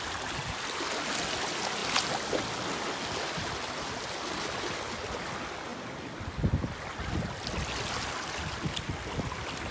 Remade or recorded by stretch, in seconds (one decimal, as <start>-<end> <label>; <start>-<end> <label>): 0.0-9.7 recorded